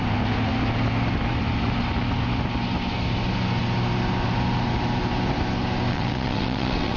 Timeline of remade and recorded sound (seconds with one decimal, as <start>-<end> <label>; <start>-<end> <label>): 0.0-5.9 recorded; 5.9-7.0 remade